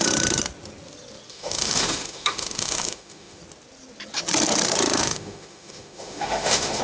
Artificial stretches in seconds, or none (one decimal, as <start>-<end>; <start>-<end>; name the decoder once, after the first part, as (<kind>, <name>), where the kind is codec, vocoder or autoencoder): 1.3-3.4 (autoencoder, DAC-VAE); 5.0-6.8